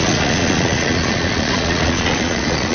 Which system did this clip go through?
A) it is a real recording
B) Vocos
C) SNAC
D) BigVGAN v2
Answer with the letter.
B